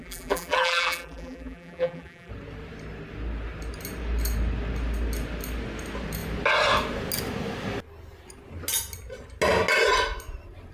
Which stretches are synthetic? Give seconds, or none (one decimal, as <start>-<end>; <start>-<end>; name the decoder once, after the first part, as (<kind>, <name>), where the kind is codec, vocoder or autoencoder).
0.0-2.3 (vocoder, BigVGAN v2)